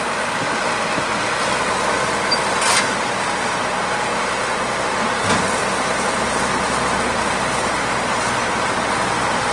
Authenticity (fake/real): real